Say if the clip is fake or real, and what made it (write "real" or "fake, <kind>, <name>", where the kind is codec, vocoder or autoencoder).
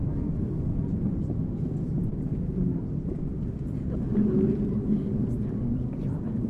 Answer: real